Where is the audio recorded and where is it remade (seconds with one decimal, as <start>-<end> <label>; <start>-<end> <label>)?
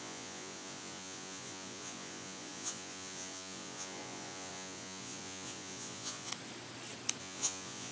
0.0-6.3 remade; 6.3-7.2 recorded; 7.2-7.9 remade